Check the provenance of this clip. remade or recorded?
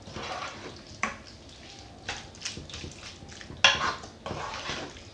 recorded